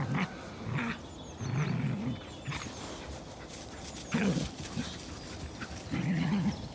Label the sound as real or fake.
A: real